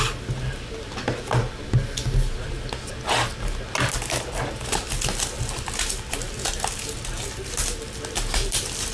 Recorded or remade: recorded